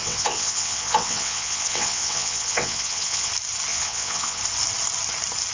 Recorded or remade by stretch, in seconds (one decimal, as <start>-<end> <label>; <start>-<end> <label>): 0.0-3.3 remade; 3.3-3.7 recorded; 3.7-4.4 remade; 4.4-5.5 recorded